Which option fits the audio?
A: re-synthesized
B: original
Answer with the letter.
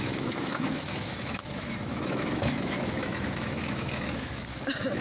A